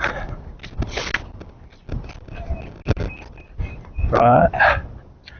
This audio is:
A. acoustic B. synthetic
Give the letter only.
A